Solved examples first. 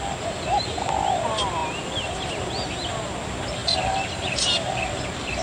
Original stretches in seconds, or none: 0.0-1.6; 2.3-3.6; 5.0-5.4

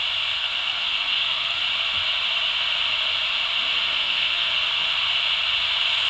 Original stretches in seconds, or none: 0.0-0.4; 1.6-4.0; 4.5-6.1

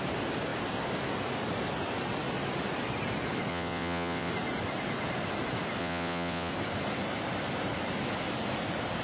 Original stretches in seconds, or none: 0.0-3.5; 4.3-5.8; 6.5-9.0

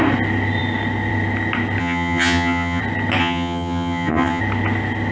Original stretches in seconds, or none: 0.0-1.8; 2.8-3.2; 4.4-5.1

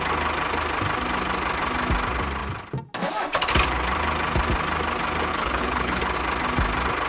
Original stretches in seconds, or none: 0.0-5.3; 6.0-7.1